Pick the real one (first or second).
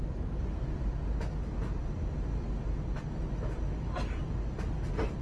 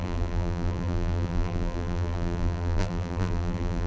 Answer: first